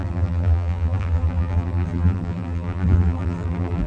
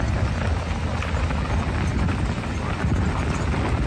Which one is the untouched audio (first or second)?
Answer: second